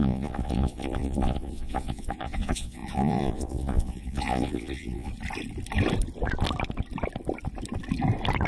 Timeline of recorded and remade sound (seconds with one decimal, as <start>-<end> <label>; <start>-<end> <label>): 0.0-5.1 remade; 5.1-8.5 recorded